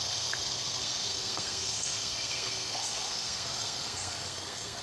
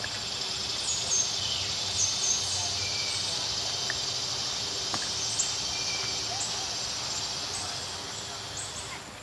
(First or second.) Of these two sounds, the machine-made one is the first